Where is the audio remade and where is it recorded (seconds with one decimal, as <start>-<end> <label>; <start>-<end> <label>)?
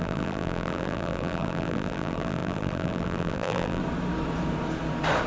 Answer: 0.0-3.8 remade; 3.8-5.3 recorded